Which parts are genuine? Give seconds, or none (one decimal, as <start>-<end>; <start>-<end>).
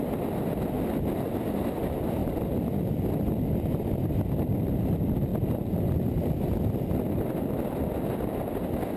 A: 0.0-2.2; 4.3-9.0